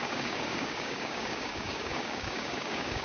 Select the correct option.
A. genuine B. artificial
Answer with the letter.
B